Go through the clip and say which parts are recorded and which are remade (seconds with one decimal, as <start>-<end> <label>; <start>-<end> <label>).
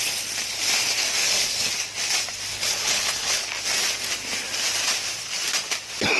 0.0-1.2 recorded; 1.2-1.7 remade; 1.7-2.5 recorded; 2.5-3.4 remade; 3.4-6.2 recorded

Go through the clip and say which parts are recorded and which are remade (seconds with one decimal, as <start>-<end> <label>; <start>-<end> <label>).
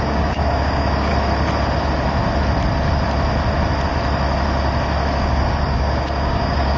0.0-1.1 remade; 1.1-5.2 recorded; 5.2-6.8 remade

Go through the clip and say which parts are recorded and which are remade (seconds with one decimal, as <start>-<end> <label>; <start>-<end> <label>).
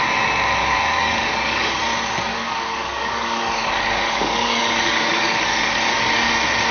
0.0-0.6 recorded; 0.6-1.8 remade; 1.8-2.3 recorded; 2.3-6.3 remade; 6.3-6.7 recorded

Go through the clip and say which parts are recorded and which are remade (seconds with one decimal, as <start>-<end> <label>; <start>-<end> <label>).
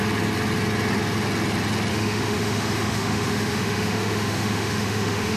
0.0-1.9 recorded; 1.9-5.4 remade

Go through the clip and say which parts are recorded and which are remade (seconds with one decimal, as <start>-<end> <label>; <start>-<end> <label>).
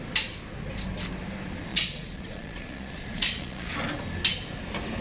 0.0-1.7 recorded; 1.7-3.7 remade; 3.7-5.0 recorded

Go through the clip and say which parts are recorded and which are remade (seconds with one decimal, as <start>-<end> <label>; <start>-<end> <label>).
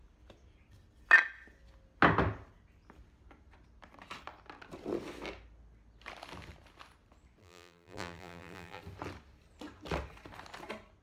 0.0-7.4 recorded; 7.4-8.8 remade; 8.8-11.0 recorded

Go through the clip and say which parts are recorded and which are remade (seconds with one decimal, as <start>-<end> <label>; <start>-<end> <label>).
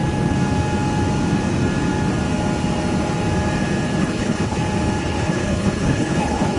0.0-4.0 recorded; 4.0-4.6 remade; 4.6-5.0 recorded; 5.0-6.6 remade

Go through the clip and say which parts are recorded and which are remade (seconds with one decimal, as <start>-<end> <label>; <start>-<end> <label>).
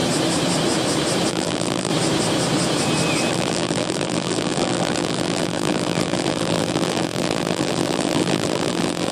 0.0-1.3 recorded; 1.3-1.9 remade; 1.9-3.3 recorded; 3.3-9.1 remade